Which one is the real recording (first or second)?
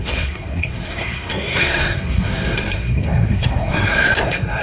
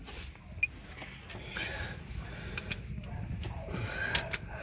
second